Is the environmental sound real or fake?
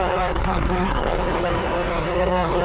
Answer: fake